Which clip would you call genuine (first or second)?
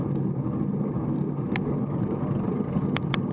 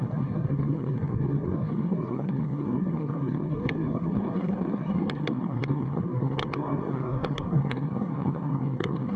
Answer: first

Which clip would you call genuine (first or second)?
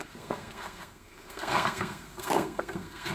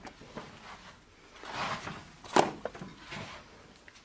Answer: second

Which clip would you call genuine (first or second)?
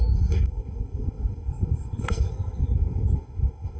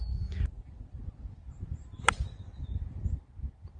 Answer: second